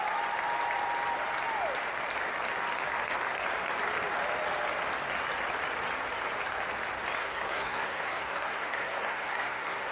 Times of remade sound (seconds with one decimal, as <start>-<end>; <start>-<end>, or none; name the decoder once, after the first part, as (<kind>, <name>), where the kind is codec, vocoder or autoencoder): 7.2-9.9 (codec, SNAC)